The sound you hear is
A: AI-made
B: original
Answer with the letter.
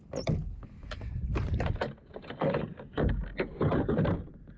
B